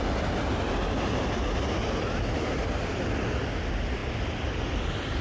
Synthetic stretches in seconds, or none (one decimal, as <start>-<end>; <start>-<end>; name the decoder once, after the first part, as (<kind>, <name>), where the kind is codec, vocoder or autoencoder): none